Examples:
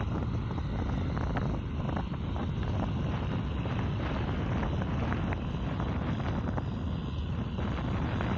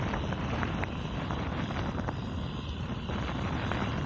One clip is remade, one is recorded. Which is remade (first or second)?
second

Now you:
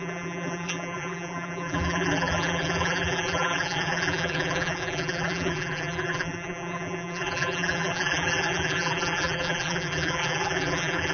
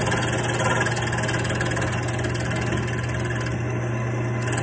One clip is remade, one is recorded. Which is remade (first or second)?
first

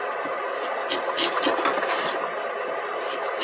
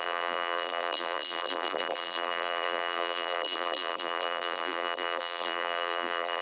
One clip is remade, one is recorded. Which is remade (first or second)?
second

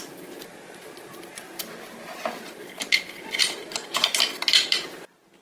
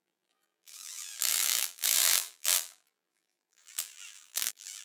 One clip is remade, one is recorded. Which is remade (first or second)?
second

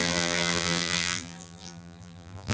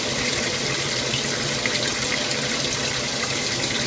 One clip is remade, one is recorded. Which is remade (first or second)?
first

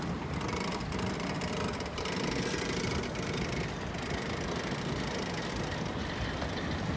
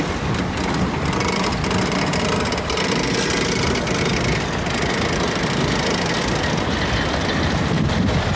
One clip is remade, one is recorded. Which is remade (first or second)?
first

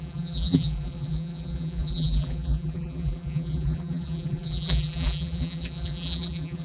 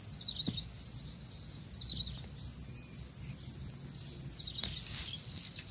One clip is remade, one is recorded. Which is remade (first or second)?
first